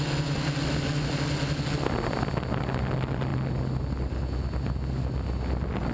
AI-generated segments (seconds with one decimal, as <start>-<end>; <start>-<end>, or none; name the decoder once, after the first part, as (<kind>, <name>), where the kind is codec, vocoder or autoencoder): none